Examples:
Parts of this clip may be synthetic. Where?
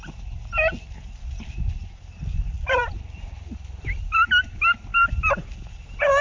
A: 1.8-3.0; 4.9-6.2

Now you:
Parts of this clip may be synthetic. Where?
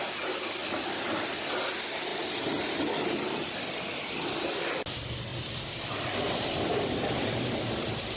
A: 0.6-1.1; 2.1-4.6; 5.3-6.9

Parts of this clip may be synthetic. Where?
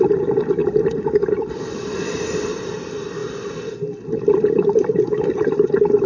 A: 0.0-3.2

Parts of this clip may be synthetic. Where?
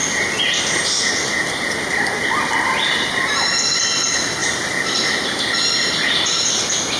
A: 0.0-0.6; 4.4-5.1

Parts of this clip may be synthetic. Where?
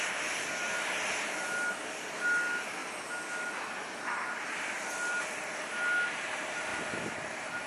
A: 6.7-7.7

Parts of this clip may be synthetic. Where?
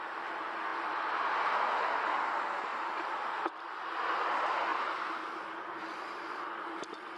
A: none